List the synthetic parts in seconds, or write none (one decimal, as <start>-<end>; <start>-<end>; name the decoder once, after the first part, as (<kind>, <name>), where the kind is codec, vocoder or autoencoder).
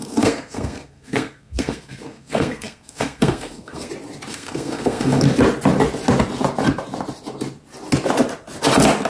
0.0-3.9 (codec, SNAC); 4.3-5.2